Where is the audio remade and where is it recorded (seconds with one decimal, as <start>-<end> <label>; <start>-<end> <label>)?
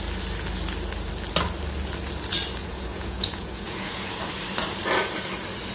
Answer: 0.0-2.6 recorded; 2.6-4.2 remade; 4.2-5.7 recorded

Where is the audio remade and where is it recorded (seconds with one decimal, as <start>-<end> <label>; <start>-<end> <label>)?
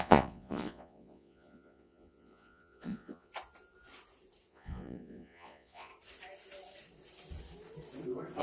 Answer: 0.0-3.3 remade; 3.3-4.5 recorded; 4.5-5.9 remade; 5.9-8.4 recorded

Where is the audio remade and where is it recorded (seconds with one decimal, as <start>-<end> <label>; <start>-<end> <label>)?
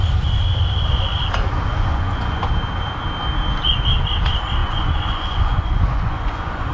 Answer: 0.0-1.7 recorded; 1.7-2.4 remade; 2.4-4.6 recorded; 4.6-6.7 remade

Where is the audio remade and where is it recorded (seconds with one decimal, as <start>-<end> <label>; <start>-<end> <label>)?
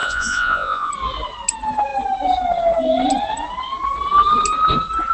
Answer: 0.0-0.9 remade; 0.9-5.1 recorded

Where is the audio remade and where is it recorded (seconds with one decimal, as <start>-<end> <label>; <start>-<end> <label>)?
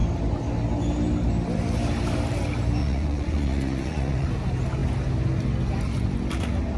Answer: 0.0-2.8 recorded; 2.8-4.3 remade; 4.3-6.8 recorded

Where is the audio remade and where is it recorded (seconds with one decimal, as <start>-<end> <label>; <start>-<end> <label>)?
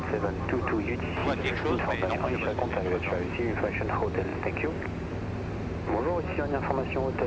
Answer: 0.0-7.3 recorded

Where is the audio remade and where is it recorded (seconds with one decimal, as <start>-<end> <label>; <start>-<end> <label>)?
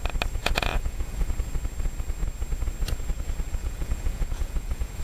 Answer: 0.0-0.4 recorded; 0.4-1.3 remade; 1.3-3.6 recorded; 3.6-5.0 remade